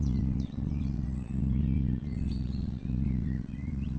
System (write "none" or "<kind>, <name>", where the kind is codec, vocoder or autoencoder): vocoder, WaveNeXt